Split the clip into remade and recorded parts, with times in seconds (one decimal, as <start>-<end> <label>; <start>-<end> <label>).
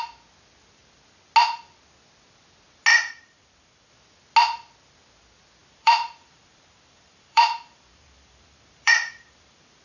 0.0-2.9 recorded; 2.9-3.9 remade; 3.9-5.6 recorded; 5.6-9.8 remade